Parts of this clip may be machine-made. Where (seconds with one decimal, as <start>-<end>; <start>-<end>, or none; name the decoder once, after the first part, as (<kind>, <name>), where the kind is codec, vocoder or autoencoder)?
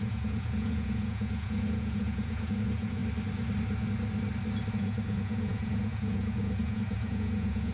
0.0-3.0 (vocoder, Vocos); 4.7-7.7